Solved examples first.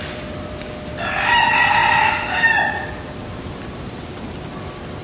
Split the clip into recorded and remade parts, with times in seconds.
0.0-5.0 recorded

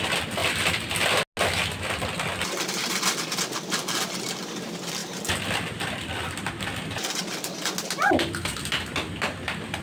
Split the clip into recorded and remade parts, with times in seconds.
0.0-5.0 recorded; 5.0-7.6 remade; 7.6-9.8 recorded

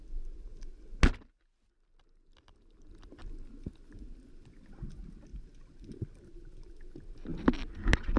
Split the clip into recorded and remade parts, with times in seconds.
0.0-8.2 recorded

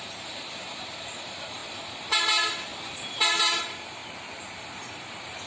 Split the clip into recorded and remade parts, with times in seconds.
0.0-4.0 remade; 4.0-4.5 recorded; 4.5-5.5 remade

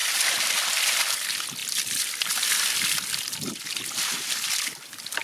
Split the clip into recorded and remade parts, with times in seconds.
0.0-0.8 remade; 0.8-5.2 recorded